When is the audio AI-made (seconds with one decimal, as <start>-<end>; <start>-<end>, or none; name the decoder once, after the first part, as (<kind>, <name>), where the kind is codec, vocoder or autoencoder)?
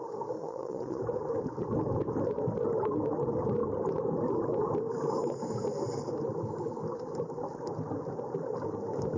0.4-1.0 (vocoder, WaveNeXt)